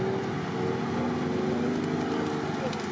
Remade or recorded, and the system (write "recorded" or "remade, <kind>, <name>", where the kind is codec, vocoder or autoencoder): recorded